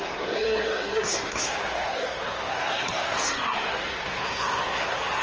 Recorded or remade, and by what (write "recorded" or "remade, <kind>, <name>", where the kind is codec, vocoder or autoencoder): remade, codec, SNAC